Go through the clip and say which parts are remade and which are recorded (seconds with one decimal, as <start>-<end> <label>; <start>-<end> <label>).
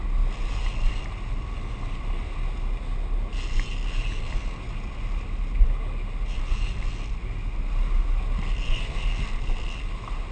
0.0-10.3 recorded